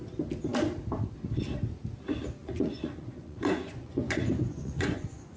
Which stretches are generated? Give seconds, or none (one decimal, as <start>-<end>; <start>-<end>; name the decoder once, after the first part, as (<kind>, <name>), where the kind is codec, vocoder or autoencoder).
2.4-5.4 (vocoder, Vocos)